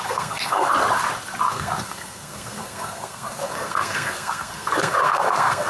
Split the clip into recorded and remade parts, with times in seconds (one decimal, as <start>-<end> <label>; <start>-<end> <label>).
0.0-0.7 remade; 0.7-1.5 recorded; 1.5-5.7 remade